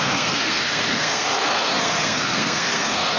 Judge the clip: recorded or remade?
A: remade